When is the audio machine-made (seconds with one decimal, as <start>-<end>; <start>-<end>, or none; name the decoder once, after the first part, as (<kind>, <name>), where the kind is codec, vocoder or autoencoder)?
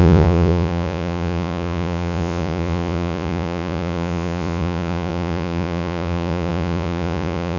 0.0-7.6 (vocoder, Vocos)